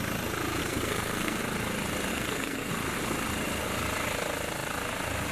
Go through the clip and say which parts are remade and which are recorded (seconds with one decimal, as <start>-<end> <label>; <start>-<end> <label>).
0.0-0.6 recorded; 0.6-1.4 remade; 1.4-2.1 recorded; 2.1-2.7 remade; 2.7-5.3 recorded

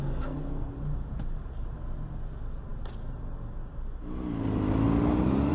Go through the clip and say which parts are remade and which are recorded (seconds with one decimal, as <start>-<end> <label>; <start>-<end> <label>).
0.0-0.7 remade; 0.7-5.5 recorded

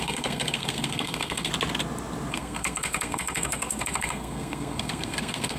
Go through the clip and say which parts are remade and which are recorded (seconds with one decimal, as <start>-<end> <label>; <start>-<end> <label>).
0.0-1.5 remade; 1.5-2.3 recorded; 2.3-5.6 remade

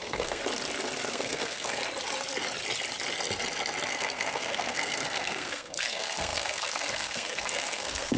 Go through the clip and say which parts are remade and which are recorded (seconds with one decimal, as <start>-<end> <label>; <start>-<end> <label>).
0.0-0.4 remade; 0.4-1.1 recorded; 1.1-1.8 remade; 1.8-3.9 recorded; 3.9-8.2 remade

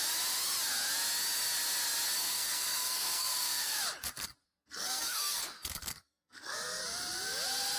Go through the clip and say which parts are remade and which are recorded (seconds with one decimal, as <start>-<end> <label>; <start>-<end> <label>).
0.0-2.2 recorded; 2.2-3.8 remade; 3.8-4.4 recorded; 4.4-6.8 remade; 6.8-7.8 recorded